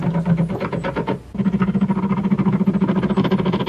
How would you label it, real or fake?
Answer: real